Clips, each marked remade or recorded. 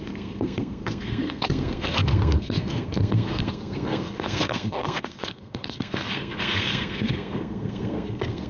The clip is remade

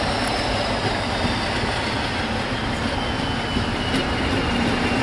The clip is recorded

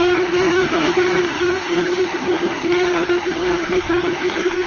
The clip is remade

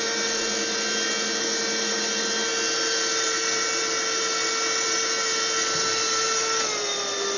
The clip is recorded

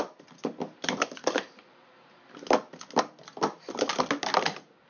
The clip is recorded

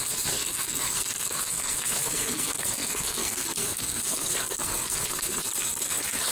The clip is remade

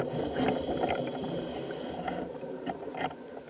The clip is recorded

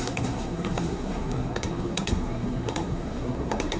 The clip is remade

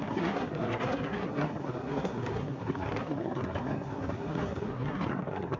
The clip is remade